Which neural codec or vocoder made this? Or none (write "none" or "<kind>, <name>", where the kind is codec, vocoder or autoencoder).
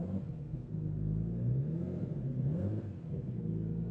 codec, SNAC